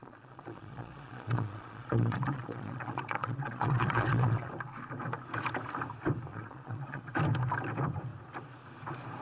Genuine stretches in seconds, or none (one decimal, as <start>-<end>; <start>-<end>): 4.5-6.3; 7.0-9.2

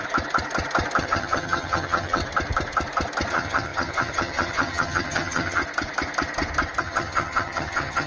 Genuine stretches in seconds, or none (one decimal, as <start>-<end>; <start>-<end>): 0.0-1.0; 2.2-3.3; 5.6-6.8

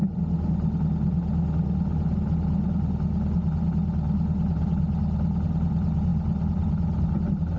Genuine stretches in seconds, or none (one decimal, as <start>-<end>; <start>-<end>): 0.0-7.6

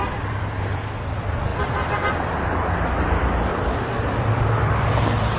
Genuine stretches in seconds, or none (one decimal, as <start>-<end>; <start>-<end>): 0.9-1.5; 4.7-5.4